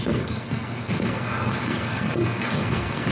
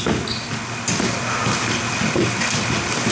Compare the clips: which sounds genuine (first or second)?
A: second